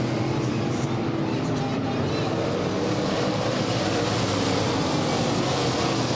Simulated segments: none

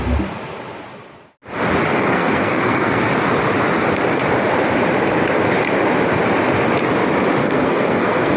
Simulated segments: 1.9-3.0 (codec, SNAC); 7.4-8.4